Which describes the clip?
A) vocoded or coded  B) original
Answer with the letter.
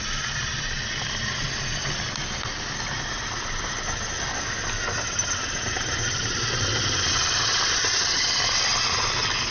B